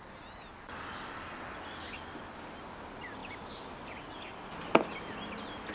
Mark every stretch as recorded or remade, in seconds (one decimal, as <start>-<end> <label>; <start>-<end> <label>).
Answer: 0.0-5.7 recorded